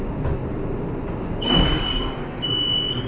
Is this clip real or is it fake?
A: real